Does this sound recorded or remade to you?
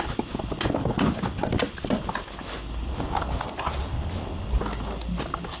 recorded